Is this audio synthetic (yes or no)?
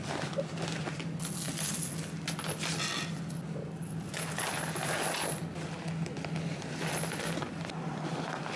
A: no